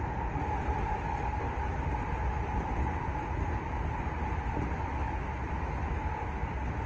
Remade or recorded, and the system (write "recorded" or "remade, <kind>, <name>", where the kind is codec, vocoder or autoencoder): recorded